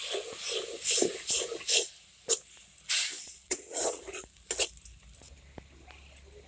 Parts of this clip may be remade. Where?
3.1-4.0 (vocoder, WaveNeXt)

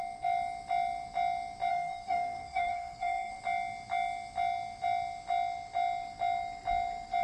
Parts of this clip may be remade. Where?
1.7-3.4 (codec, SNAC)

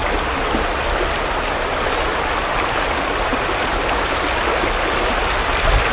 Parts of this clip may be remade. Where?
3.3-4.2 (vocoder, BigVGAN v2)

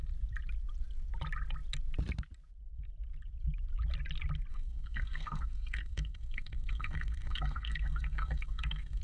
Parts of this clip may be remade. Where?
4.5-9.0 (codec, SNAC)

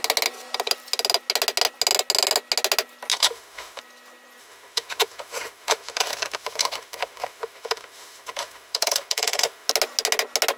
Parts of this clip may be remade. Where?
3.1-3.8 (autoencoder, DAC-VAE); 4.4-9.7

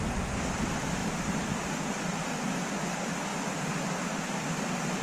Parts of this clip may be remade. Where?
0.0-2.3 (vocoder, BigVGAN v2); 2.9-3.3; 4.4-5.0

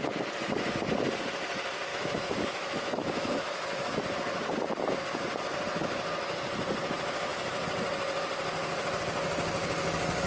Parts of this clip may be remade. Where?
1.9-4.0 (autoencoder, DAC-VAE)

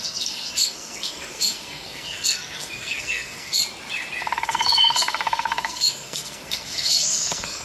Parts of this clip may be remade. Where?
0.0-3.6 (codec, SNAC); 4.2-7.6